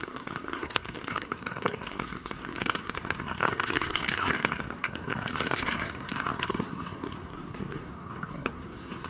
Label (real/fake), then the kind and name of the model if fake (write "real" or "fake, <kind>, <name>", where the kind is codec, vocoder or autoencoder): fake, codec, SNAC